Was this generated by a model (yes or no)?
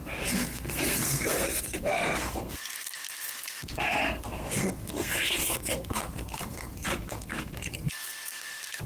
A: yes